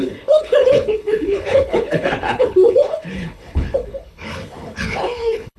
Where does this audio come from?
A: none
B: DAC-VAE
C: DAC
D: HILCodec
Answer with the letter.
D